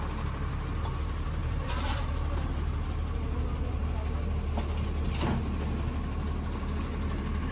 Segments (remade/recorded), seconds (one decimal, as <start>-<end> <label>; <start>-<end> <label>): 0.0-1.4 recorded; 1.4-2.0 remade; 2.0-7.5 recorded